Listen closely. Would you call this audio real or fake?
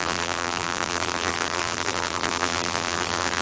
fake